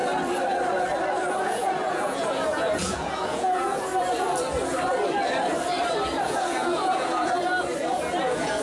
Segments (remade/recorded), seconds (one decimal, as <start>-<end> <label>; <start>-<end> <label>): 0.0-1.3 recorded; 1.3-3.9 remade; 3.9-6.2 recorded; 6.2-7.5 remade; 7.5-8.2 recorded; 8.2-8.6 remade